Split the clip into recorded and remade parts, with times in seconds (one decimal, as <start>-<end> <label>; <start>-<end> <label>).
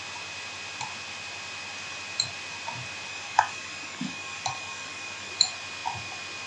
0.0-3.1 recorded; 3.1-5.3 remade; 5.3-6.5 recorded